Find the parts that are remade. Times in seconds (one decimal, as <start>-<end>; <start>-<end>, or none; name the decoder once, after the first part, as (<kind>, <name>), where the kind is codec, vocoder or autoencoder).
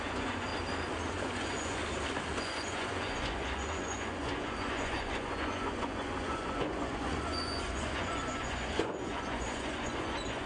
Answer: 0.0-0.5 (vocoder, Vocos); 1.1-1.8; 2.4-10.5